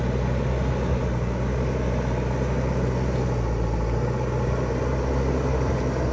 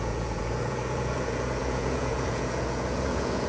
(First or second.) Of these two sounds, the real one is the first